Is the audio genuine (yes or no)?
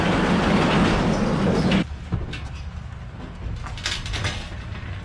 yes